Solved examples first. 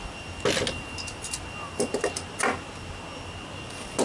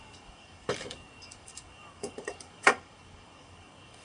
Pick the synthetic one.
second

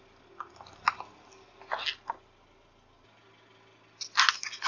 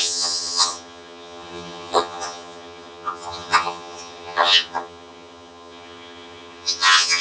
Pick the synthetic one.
second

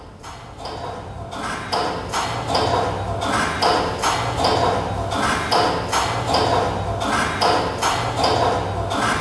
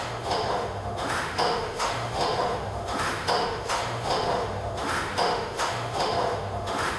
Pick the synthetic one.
second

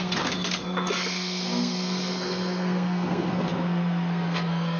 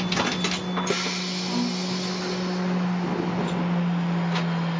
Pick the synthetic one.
first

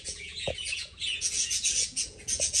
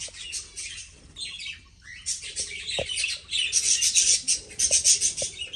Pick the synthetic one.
first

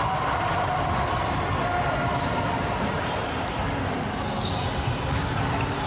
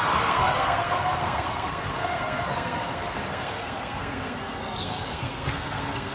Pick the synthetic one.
second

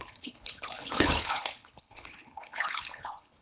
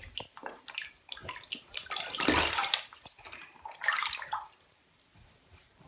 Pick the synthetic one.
first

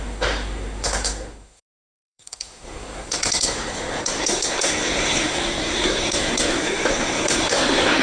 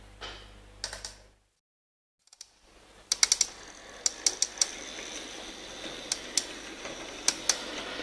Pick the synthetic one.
first